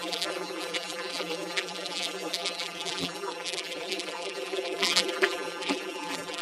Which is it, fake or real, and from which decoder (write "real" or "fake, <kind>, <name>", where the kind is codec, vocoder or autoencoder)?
fake, vocoder, BigVGAN v2